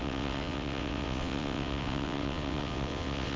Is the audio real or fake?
fake